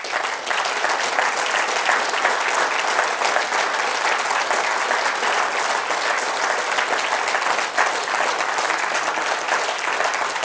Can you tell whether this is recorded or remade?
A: recorded